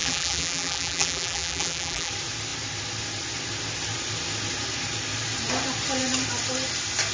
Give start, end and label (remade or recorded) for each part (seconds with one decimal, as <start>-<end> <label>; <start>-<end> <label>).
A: 0.0-2.1 remade; 2.1-7.1 recorded